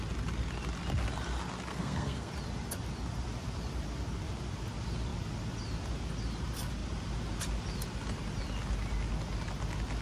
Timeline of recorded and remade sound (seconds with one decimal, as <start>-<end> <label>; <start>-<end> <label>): 0.0-1.7 recorded; 1.7-2.3 remade; 2.3-10.0 recorded